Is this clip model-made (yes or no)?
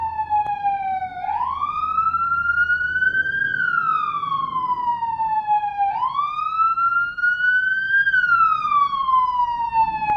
no